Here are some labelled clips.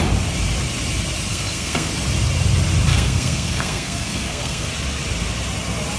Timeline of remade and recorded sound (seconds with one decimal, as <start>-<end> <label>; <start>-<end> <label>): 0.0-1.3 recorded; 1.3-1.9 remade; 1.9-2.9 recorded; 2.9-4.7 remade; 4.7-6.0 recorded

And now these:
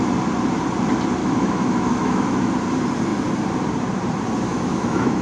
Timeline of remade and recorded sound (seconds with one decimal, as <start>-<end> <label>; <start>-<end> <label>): 0.0-1.2 recorded; 1.2-2.5 remade; 2.5-4.5 recorded; 4.5-5.2 remade

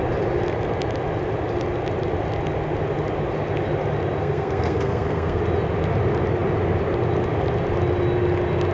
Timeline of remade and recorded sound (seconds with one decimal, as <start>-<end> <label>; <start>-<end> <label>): 0.0-4.2 recorded; 4.2-5.4 remade; 5.4-8.7 recorded

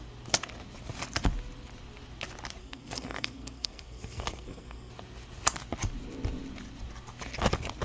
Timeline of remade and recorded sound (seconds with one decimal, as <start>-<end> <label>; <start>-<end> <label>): 0.0-2.6 recorded; 2.6-4.9 remade; 4.9-7.8 recorded

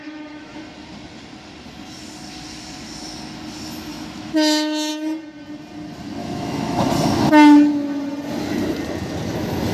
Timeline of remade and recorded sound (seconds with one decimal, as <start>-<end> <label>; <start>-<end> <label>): 0.0-0.6 remade; 0.6-3.9 recorded; 3.9-4.9 remade; 4.9-6.2 recorded; 6.2-6.9 remade; 6.9-9.7 recorded

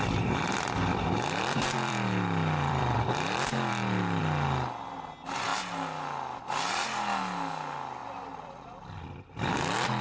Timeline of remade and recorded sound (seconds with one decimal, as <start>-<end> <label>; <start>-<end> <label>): 0.0-0.9 recorded; 0.9-4.2 remade; 4.2-8.0 recorded; 8.0-9.0 remade; 9.0-10.0 recorded

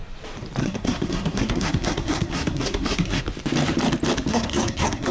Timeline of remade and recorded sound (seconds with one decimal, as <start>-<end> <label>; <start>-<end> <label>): 0.0-0.6 recorded; 0.6-3.2 remade; 3.2-4.3 recorded; 4.3-5.1 remade